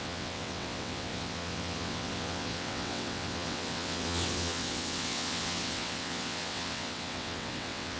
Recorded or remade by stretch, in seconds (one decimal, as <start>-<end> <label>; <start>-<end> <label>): 0.0-8.0 remade